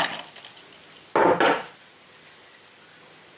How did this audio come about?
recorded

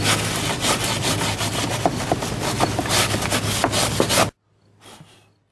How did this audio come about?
recorded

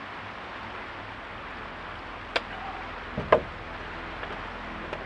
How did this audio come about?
recorded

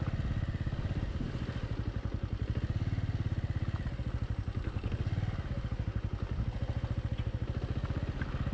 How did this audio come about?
recorded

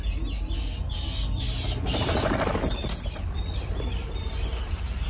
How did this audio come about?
recorded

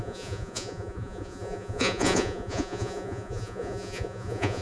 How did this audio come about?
remade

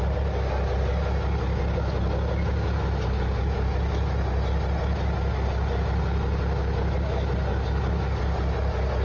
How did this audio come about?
recorded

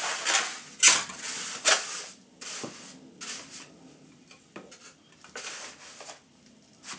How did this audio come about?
recorded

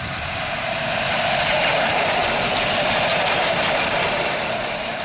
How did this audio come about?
recorded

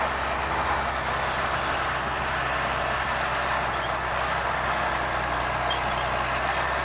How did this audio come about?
recorded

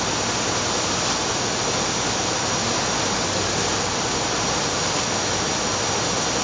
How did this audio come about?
recorded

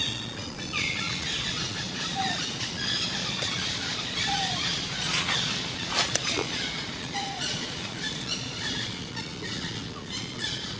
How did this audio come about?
remade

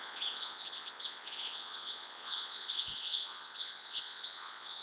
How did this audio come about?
remade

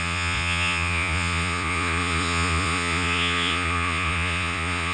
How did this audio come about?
remade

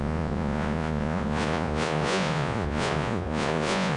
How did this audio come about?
remade